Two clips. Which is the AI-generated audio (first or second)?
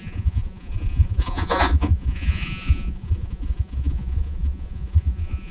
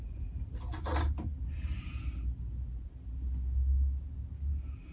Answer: first